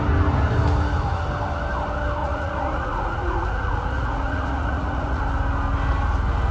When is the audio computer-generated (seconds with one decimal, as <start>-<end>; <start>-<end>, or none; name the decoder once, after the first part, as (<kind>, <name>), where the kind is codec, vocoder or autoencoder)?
2.2-5.2 (vocoder, Vocos)

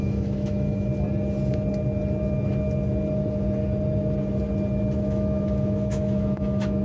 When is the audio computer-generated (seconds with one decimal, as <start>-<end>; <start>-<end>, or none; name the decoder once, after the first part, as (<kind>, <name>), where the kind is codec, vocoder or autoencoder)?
0.0-0.9 (autoencoder, DAC-VAE); 5.0-6.8

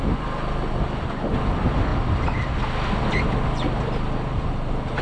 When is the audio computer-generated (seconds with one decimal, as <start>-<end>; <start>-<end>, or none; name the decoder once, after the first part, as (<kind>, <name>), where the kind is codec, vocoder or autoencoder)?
none

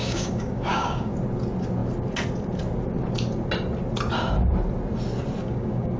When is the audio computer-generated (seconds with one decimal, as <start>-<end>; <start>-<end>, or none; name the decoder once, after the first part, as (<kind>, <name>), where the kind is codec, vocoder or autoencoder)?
0.0-1.1 (codec, DAC); 5.4-6.0

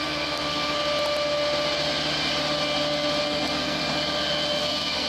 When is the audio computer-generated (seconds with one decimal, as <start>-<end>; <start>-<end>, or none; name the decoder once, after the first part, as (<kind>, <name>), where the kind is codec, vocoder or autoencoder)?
0.0-0.8 (codec, SNAC); 3.2-3.8; 4.6-5.1

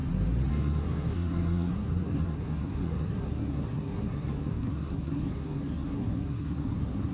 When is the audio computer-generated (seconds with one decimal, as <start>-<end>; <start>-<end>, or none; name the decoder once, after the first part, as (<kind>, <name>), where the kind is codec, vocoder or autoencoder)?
0.5-7.1 (codec, SNAC)

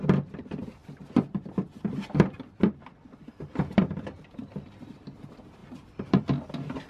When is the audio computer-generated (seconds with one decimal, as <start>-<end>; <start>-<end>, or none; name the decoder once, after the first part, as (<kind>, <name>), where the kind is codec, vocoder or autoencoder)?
none

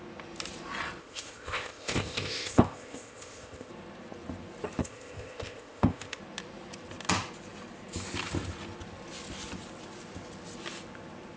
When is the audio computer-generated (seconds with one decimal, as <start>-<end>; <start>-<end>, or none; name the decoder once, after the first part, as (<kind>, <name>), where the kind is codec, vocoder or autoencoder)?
1.0-3.7 (codec, ZipCodec); 4.8-6.2